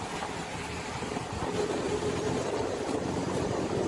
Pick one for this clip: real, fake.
real